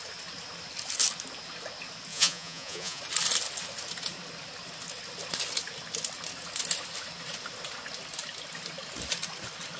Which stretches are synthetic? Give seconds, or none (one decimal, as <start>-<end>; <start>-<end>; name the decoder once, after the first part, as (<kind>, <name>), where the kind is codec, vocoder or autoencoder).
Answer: 2.1-3.0 (vocoder, Vocos)